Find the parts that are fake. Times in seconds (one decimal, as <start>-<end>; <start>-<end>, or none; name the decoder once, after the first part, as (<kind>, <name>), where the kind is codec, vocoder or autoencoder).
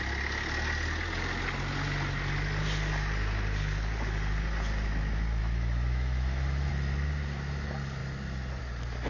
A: 5.4-6.7 (autoencoder, DAC-VAE)